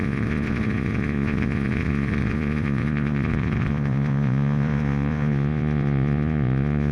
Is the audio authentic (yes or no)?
no